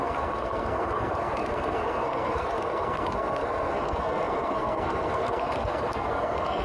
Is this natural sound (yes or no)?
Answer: no